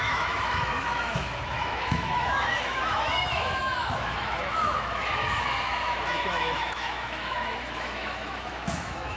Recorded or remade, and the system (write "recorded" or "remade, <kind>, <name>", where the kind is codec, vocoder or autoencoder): remade, autoencoder, DAC-VAE